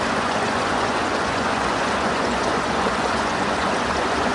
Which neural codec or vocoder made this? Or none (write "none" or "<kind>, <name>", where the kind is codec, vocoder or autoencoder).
vocoder, Vocos